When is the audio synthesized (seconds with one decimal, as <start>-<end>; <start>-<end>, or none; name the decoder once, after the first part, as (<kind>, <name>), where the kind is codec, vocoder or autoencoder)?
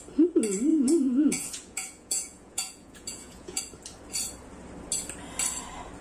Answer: 0.7-3.6 (vocoder, Vocos)